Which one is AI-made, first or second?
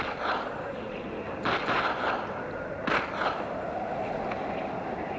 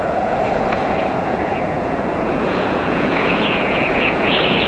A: second